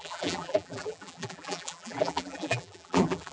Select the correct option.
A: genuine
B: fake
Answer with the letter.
B